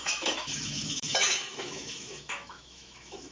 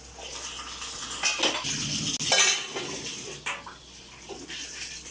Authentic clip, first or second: second